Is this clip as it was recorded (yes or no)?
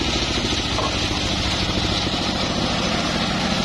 yes